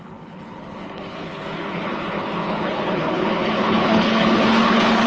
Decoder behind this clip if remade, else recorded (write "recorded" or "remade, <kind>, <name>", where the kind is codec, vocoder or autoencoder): remade, codec, HILCodec